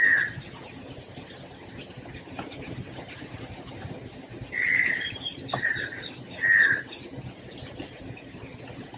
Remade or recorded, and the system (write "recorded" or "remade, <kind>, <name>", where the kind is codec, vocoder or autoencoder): recorded